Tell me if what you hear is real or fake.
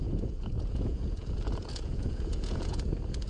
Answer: fake